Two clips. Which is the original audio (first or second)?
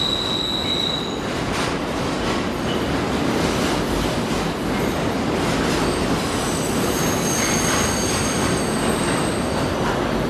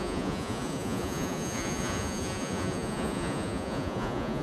first